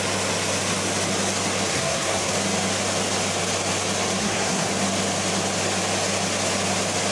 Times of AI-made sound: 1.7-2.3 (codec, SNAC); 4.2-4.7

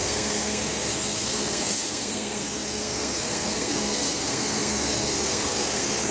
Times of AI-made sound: 0.0-6.1 (codec, SNAC)

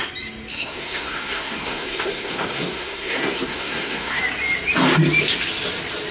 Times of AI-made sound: 0.5-4.2 (codec, SNAC)

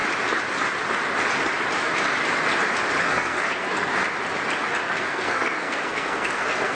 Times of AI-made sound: 3.0-3.9 (codec, SNAC); 4.8-6.7

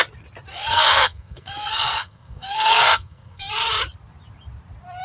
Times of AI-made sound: 0.5-3.5 (codec, SNAC)

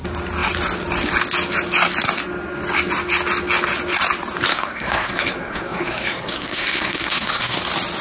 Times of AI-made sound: 4.5-7.6 (codec, SNAC)